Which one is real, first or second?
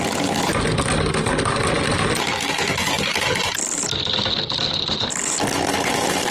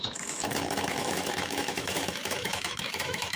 first